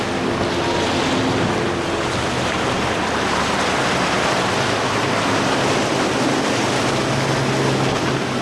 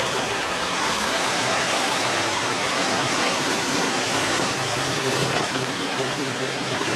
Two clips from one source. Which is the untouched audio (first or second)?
first